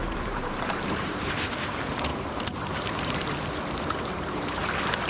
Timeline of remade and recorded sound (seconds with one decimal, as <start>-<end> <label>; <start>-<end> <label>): 0.0-1.5 remade; 1.5-2.1 recorded; 2.1-4.4 remade; 4.4-5.1 recorded